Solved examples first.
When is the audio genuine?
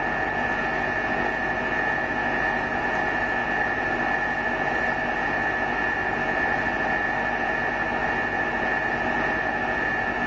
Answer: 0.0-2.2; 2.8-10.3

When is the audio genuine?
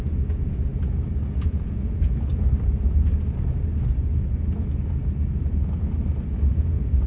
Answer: 0.7-1.3; 2.3-6.6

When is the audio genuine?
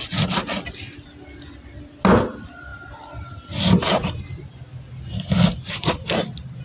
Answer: 0.0-6.6